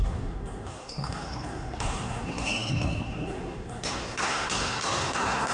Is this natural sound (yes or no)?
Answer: no